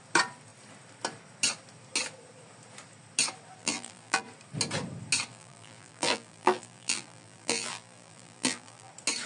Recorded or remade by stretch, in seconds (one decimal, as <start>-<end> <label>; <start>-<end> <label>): 0.0-3.6 recorded; 3.6-4.2 remade; 4.2-5.3 recorded; 5.3-8.9 remade; 8.9-9.3 recorded